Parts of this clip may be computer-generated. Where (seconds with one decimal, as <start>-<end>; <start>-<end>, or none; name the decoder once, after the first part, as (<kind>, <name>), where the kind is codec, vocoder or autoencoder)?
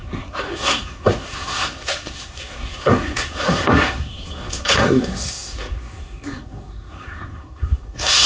0.0-8.3 (codec, SNAC)